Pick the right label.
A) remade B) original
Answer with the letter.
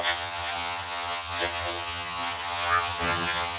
A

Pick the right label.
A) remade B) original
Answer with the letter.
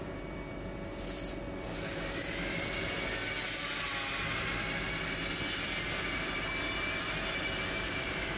B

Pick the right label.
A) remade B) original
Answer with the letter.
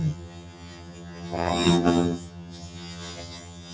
A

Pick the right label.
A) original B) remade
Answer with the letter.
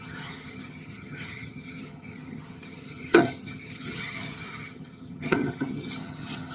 B